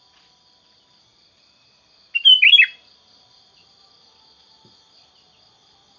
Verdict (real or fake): real